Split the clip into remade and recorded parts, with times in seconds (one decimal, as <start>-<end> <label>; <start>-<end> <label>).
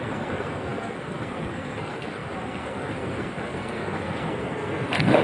0.0-5.2 remade